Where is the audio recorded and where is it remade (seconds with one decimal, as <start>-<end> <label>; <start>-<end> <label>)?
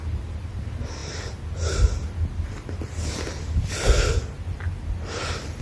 0.0-5.6 recorded